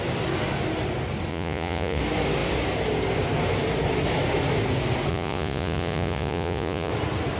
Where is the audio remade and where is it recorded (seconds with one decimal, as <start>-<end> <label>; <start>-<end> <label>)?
0.0-1.3 recorded; 1.3-2.0 remade; 2.0-5.1 recorded; 5.1-6.9 remade; 6.9-7.4 recorded